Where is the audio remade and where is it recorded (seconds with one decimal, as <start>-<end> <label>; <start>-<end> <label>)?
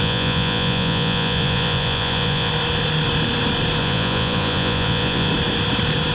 0.0-2.5 remade; 2.5-3.8 recorded; 3.8-5.3 remade; 5.3-6.1 recorded